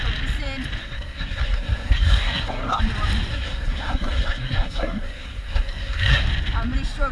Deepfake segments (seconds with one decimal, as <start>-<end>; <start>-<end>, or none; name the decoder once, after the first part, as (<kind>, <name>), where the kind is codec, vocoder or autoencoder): 0.8-2.8 (codec, SNAC); 3.3-6.2